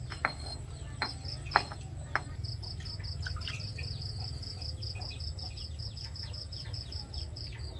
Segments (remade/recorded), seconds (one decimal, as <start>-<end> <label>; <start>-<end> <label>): 0.0-7.8 recorded